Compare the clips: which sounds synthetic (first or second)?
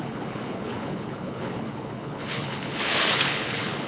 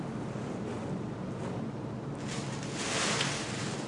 first